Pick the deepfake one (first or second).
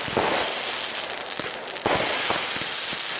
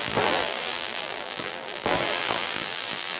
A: second